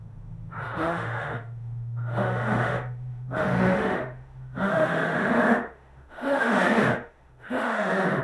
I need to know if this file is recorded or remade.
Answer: remade